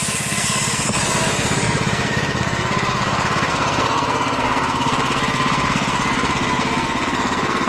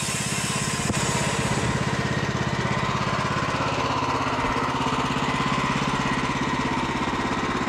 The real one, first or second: second